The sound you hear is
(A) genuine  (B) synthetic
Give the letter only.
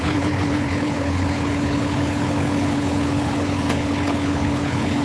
B